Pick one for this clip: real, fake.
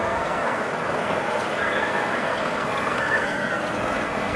fake